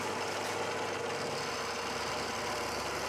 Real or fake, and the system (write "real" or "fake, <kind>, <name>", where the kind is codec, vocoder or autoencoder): real